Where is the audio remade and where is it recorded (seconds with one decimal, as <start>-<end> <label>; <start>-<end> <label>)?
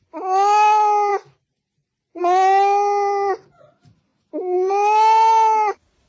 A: 0.0-1.1 recorded; 1.1-2.2 remade; 2.2-6.1 recorded